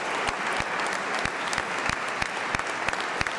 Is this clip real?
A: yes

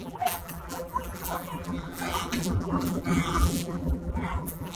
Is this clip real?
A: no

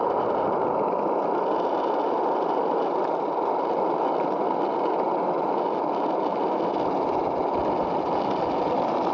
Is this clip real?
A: yes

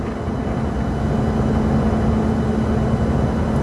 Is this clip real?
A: yes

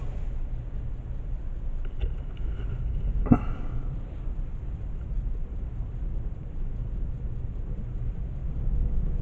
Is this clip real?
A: yes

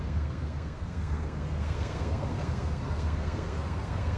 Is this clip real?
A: no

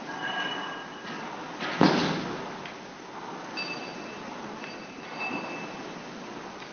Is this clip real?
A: yes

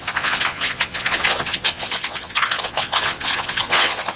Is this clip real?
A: no